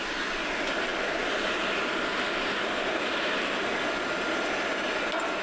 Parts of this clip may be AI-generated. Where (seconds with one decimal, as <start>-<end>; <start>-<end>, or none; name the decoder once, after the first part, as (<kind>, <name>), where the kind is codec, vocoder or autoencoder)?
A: none